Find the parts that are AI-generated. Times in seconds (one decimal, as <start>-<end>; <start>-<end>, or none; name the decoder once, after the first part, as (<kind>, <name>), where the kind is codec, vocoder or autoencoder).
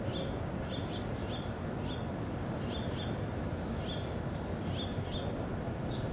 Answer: none